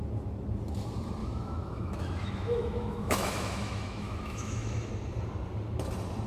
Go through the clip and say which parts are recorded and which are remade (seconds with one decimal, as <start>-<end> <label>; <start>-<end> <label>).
0.0-1.2 recorded; 1.2-4.9 remade; 4.9-6.3 recorded

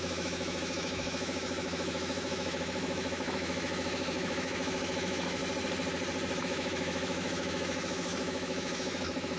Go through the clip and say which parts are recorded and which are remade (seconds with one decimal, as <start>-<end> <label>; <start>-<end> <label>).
0.0-5.4 remade; 5.4-6.4 recorded; 6.4-9.4 remade

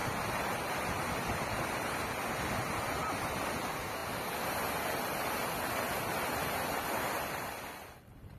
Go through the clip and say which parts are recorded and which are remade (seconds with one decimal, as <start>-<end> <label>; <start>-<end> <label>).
0.0-8.4 recorded

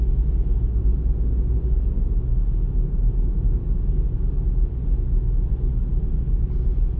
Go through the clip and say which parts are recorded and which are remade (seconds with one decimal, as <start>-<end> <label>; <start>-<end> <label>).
0.0-7.0 recorded

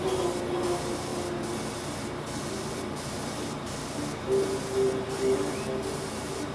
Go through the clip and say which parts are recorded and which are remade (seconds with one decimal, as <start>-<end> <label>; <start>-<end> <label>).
0.0-6.5 recorded

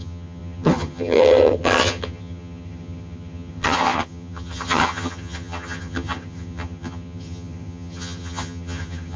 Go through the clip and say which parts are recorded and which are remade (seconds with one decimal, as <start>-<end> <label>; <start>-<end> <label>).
0.0-9.2 remade

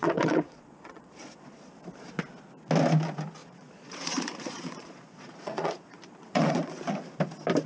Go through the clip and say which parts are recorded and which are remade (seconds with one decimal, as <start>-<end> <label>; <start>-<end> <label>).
0.0-1.7 remade; 1.7-3.4 recorded; 3.4-6.8 remade; 6.8-7.7 recorded

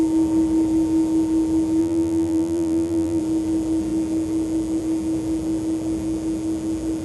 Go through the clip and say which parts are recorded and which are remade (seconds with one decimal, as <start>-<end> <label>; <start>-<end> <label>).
0.0-1.8 recorded; 1.8-3.2 remade; 3.2-7.0 recorded